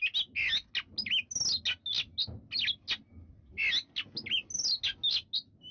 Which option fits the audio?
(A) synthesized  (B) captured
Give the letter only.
B